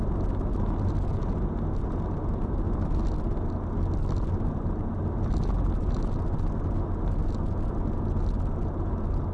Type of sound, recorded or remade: recorded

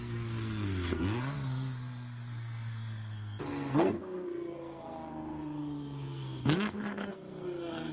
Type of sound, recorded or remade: remade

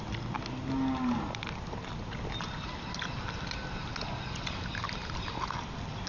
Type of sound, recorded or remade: recorded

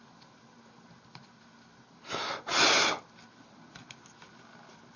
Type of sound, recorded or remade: recorded